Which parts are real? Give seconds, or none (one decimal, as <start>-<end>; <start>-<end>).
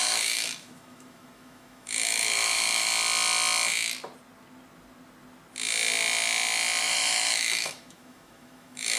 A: 2.9-6.8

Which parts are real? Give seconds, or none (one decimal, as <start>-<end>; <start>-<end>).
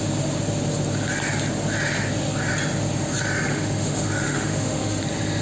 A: 0.0-3.5; 5.0-5.4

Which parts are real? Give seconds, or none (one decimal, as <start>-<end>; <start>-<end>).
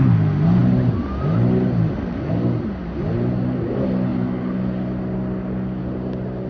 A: 0.0-6.5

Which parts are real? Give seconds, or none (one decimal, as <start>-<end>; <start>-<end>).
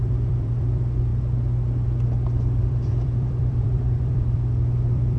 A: 1.1-2.6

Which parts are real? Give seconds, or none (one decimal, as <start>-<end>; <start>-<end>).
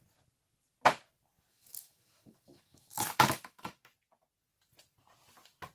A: 0.0-1.5; 3.8-5.7